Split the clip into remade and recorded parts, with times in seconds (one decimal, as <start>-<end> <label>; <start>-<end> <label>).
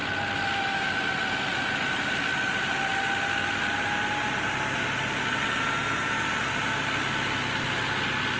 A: 0.0-8.4 recorded